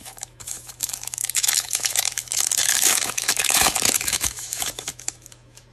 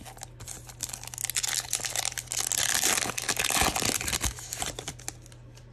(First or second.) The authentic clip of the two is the second